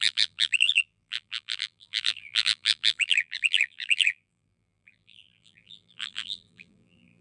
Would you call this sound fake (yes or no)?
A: yes